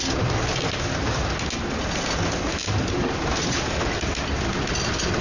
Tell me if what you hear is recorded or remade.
recorded